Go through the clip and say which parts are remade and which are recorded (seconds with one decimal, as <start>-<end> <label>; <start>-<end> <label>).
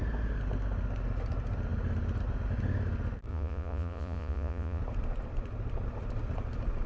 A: 0.0-3.3 recorded; 3.3-4.8 remade; 4.8-6.9 recorded